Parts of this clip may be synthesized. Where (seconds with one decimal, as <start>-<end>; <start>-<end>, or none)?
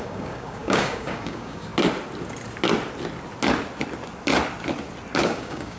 0.0-1.7; 5.2-5.8